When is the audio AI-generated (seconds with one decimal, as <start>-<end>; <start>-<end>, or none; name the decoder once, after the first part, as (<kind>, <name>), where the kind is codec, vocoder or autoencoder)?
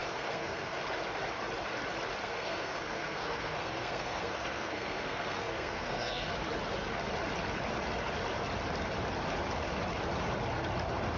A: 0.0-0.8 (codec, SNAC); 2.2-6.3